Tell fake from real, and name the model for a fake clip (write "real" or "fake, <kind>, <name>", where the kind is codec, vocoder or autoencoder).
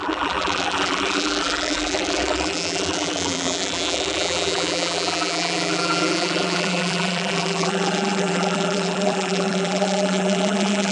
fake, vocoder, BigVGAN v2